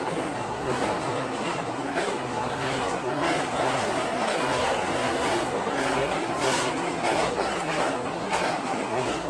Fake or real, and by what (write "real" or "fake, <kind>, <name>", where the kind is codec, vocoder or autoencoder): fake, codec, SNAC